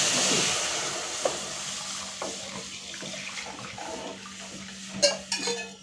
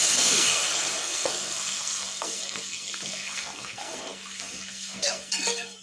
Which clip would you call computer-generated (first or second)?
second